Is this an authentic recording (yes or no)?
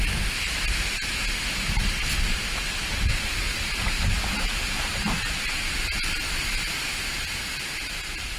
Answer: yes